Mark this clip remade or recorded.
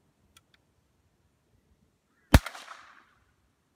recorded